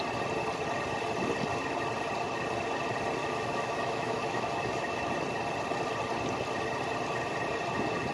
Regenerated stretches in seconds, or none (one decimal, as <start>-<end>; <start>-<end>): 3.2-5.1